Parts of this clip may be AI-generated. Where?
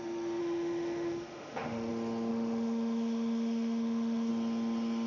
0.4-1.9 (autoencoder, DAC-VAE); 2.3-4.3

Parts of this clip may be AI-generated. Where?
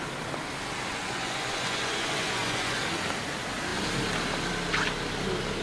0.9-2.8 (vocoder, Vocos)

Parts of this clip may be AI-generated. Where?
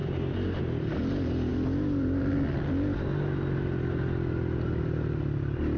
1.5-2.3 (vocoder, BigVGAN v2)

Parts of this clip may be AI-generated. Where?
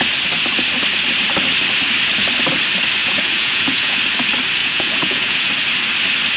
3.0-4.0 (vocoder, Vocos); 4.6-5.5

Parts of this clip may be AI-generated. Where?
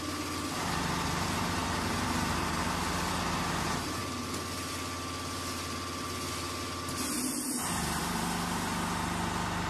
1.6-3.2 (vocoder, BigVGAN v2)